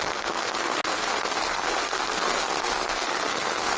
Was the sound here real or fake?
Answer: fake